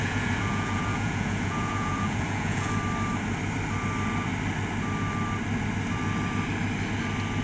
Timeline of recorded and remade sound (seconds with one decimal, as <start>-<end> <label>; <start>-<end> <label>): 0.0-2.7 remade; 2.7-7.4 recorded